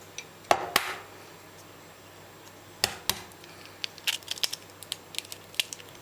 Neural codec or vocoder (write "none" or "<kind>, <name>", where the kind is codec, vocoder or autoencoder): none